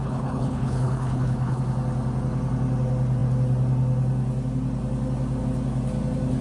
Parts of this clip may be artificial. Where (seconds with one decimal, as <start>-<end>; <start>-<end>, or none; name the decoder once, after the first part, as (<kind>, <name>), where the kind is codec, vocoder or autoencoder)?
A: 0.0-1.6 (codec, HILCodec)